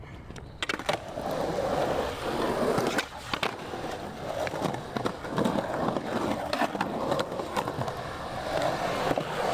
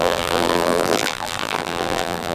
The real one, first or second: first